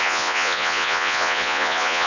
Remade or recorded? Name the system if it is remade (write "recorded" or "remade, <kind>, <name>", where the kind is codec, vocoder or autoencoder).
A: remade, vocoder, Vocos